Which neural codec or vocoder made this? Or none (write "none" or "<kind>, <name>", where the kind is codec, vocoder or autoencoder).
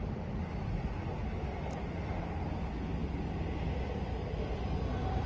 none